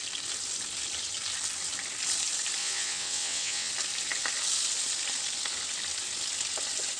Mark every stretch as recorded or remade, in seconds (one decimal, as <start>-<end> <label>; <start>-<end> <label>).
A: 0.0-2.6 recorded; 2.6-3.7 remade; 3.7-7.0 recorded